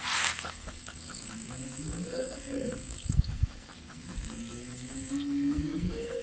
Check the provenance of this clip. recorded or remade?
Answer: remade